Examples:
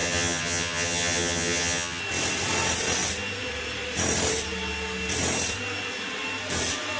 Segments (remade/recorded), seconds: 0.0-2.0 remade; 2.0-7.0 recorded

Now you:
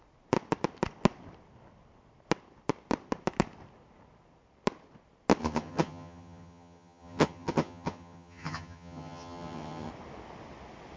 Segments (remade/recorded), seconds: 0.0-5.4 recorded; 5.4-9.9 remade; 9.9-11.0 recorded

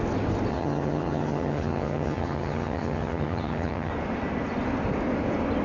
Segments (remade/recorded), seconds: 0.0-0.5 recorded; 0.5-3.9 remade; 3.9-5.6 recorded

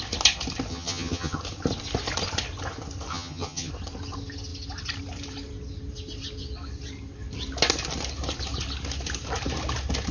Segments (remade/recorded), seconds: 0.0-0.7 recorded; 0.7-1.4 remade; 1.4-3.1 recorded; 3.1-3.7 remade; 3.7-10.1 recorded